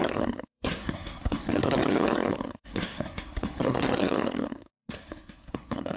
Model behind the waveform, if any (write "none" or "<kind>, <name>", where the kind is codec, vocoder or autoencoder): codec, SNAC